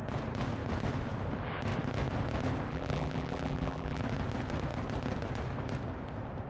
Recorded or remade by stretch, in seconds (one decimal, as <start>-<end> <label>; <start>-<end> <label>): 0.0-2.7 recorded; 2.7-4.0 remade; 4.0-6.5 recorded